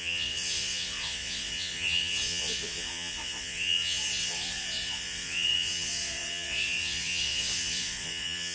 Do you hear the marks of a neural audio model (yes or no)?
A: yes